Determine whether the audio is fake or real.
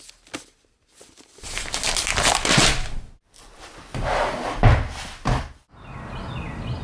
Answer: real